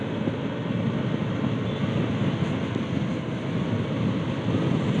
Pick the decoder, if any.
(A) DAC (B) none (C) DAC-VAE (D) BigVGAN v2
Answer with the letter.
B